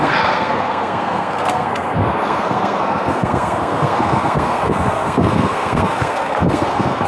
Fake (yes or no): yes